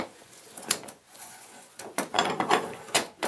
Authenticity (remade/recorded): remade